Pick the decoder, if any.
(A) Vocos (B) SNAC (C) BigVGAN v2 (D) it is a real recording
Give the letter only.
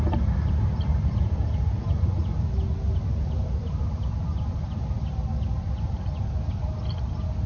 D